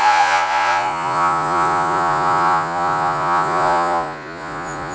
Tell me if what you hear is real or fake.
fake